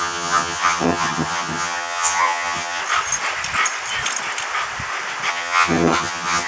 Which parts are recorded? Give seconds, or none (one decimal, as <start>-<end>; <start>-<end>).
2.8-5.3

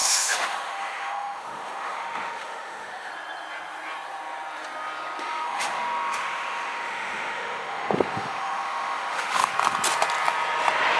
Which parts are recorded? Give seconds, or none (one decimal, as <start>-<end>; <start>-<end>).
3.1-5.2; 9.5-11.0